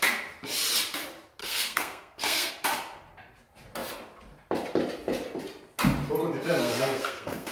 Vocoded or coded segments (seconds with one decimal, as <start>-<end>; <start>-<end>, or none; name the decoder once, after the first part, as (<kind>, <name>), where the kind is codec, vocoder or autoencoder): 1.4-2.5 (codec, SNAC); 6.6-7.5